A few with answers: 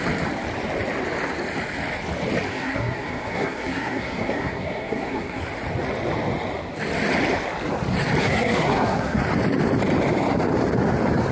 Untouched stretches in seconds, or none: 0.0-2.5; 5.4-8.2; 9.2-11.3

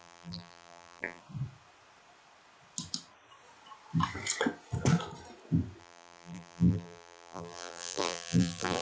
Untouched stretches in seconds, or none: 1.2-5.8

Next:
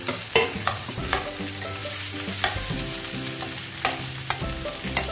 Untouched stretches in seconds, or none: 0.0-0.4; 1.2-5.1

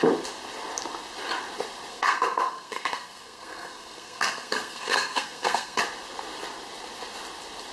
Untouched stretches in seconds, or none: 0.0-1.9; 5.8-7.7

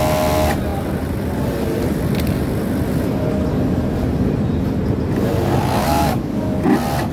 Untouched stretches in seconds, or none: 0.0-5.8; 6.6-7.1

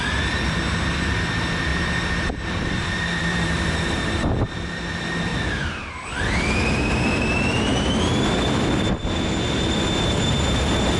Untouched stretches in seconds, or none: 0.0-1.7; 4.3-5.3; 5.9-11.0